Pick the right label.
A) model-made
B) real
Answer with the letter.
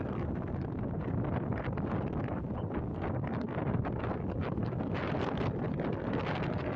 B